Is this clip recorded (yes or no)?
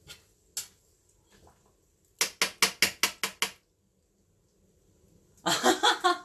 yes